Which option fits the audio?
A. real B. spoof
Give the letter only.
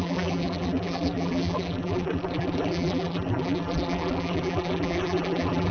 B